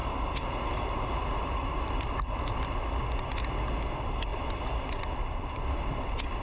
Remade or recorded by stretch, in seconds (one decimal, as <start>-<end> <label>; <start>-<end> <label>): 0.0-3.0 remade; 3.0-4.3 recorded; 4.3-6.4 remade